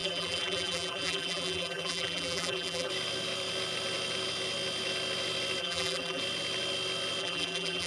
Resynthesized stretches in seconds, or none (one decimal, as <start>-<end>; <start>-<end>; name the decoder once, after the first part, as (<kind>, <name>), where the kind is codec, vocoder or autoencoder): 0.0-2.9 (vocoder, BigVGAN v2); 5.6-6.2; 7.2-7.9